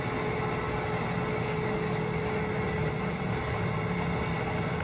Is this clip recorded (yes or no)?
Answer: yes